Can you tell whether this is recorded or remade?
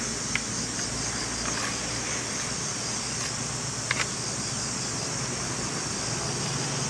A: recorded